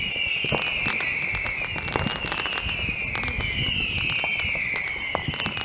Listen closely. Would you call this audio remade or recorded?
recorded